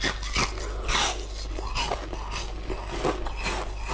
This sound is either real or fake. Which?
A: real